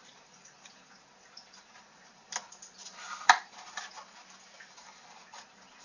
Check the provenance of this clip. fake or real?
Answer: real